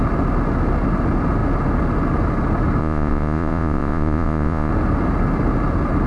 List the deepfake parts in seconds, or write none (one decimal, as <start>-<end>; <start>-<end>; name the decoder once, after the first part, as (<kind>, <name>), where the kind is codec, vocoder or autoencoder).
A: 2.8-4.7 (vocoder, Vocos)